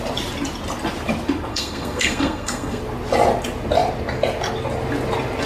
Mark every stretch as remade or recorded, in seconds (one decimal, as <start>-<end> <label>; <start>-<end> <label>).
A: 0.0-1.5 recorded; 1.5-2.8 remade; 2.8-5.5 recorded